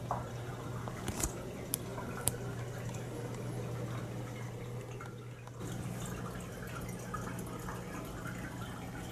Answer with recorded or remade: recorded